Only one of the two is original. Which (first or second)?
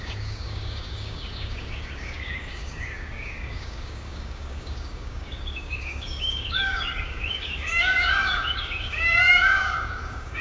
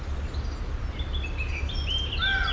second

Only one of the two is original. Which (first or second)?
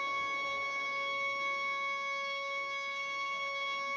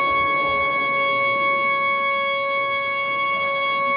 second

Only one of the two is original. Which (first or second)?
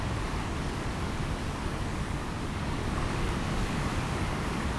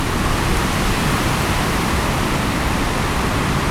second